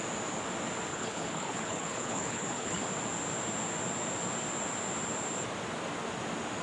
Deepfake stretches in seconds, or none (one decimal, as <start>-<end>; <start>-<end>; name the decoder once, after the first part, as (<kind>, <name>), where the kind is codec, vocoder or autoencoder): 0.9-2.8 (codec, HILCodec)